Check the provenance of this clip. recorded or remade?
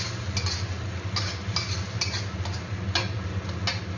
recorded